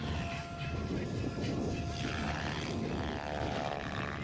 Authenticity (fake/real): real